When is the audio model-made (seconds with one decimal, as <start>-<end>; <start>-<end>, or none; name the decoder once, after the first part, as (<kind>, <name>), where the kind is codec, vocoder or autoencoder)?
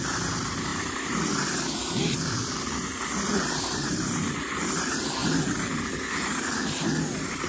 0.7-4.6 (vocoder, BigVGAN v2)